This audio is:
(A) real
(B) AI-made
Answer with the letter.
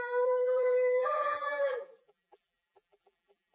B